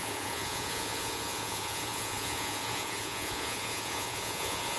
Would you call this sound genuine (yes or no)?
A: no